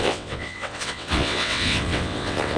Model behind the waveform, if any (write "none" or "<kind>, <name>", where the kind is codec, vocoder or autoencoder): vocoder, WaveNeXt